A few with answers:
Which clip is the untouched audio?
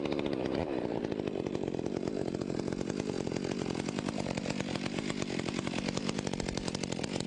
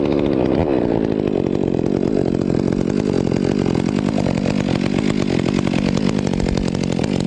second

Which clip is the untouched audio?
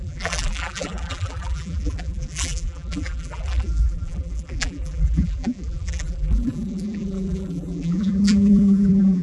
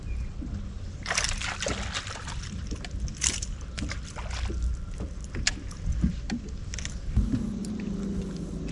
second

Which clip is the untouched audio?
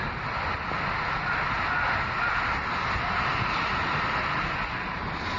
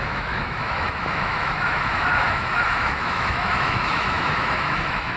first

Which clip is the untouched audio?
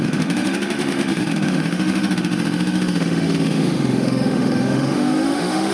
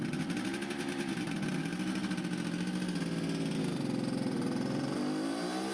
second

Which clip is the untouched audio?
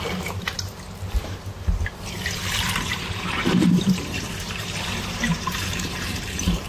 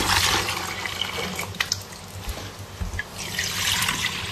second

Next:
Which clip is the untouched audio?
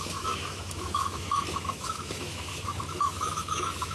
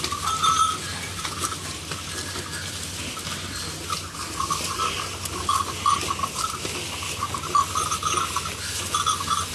second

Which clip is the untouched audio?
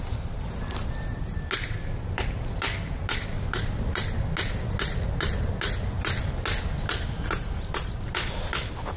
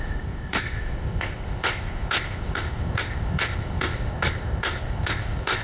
first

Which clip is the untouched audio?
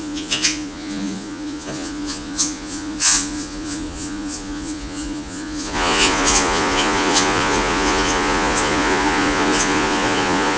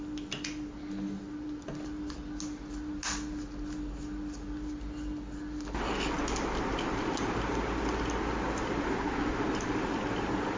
second